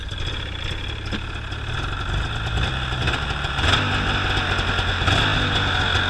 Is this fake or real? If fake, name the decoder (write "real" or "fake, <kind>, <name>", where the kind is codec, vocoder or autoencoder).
real